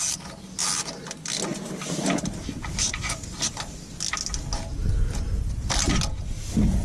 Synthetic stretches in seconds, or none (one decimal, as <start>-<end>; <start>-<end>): 1.5-3.8